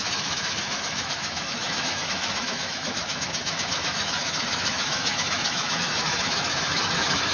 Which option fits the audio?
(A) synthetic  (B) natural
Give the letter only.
A